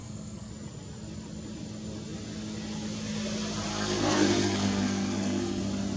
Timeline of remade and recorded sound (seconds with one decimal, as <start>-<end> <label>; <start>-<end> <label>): 0.0-0.5 remade; 0.5-3.7 recorded; 3.7-5.6 remade; 5.6-6.0 recorded